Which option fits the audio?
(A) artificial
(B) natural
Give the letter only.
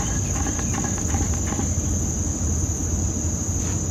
B